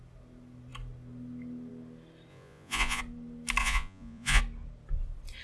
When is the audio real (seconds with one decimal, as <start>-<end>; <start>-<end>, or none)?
0.0-2.3; 3.0-3.6; 4.4-5.4